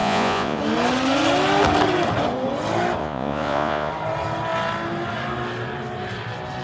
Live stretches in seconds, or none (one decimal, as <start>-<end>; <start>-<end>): 0.6-3.0; 3.9-6.6